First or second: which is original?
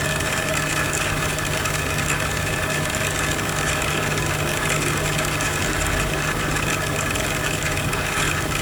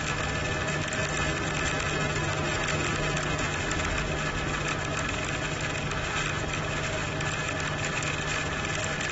second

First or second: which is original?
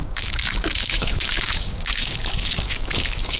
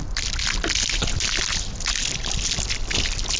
second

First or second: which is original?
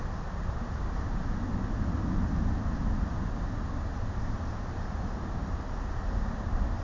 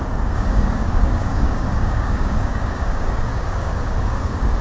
first